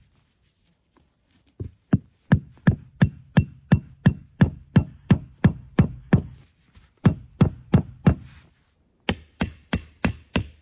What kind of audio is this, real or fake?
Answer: real